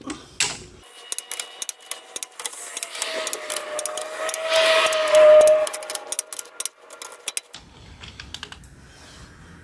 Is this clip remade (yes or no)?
no